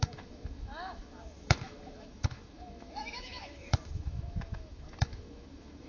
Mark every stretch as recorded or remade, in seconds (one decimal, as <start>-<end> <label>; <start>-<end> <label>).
0.0-5.9 remade